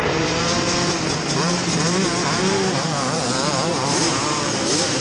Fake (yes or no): yes